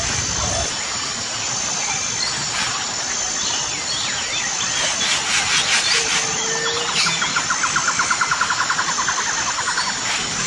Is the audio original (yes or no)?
yes